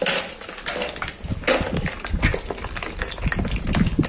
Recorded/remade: recorded